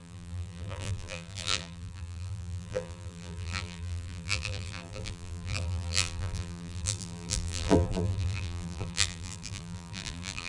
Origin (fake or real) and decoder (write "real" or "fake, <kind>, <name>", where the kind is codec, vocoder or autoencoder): fake, vocoder, BigVGAN v2